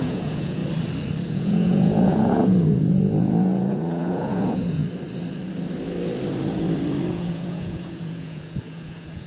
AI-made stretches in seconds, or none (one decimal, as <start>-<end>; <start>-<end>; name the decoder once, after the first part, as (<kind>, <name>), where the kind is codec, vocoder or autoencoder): 0.0-0.6 (vocoder, Vocos); 1.3-4.8; 7.1-9.3